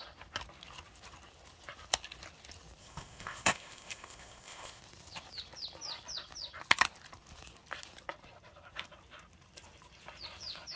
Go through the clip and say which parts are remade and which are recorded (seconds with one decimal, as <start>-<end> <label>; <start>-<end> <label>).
0.0-2.8 recorded; 2.8-4.8 remade; 4.8-10.8 recorded